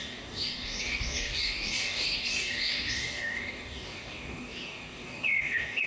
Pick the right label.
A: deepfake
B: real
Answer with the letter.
A